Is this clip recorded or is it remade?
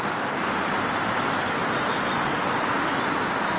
recorded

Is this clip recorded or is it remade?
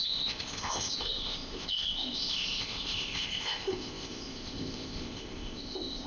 remade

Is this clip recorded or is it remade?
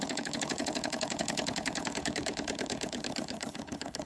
remade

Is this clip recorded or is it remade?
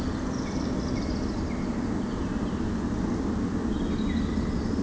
recorded